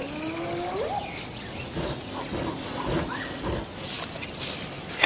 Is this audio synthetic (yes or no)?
no